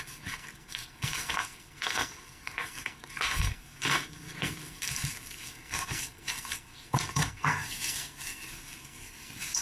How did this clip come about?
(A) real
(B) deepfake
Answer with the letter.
B